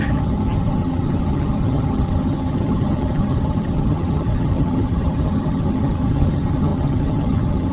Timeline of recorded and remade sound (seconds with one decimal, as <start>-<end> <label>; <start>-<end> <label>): 0.0-7.7 remade